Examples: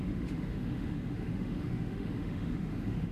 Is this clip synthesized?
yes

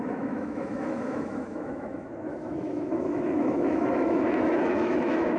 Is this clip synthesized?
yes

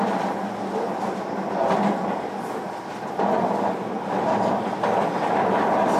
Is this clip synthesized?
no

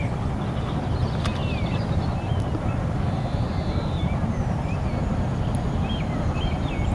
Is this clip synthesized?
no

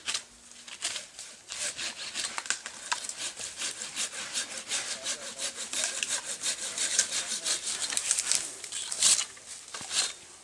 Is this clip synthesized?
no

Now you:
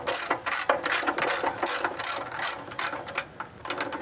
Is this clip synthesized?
no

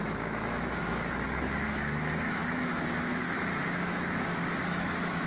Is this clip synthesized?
yes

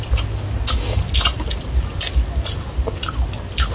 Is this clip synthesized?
no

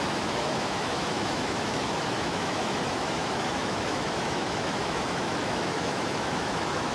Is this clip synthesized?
yes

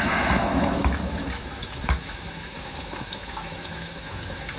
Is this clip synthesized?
yes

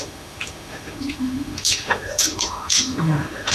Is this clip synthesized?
yes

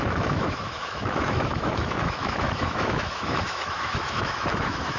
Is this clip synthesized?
yes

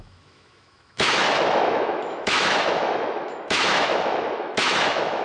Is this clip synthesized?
yes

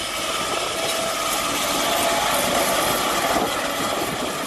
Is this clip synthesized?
no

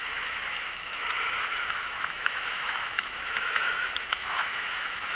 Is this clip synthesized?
yes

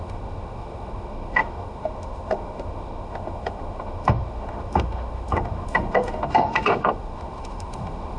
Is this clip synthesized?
yes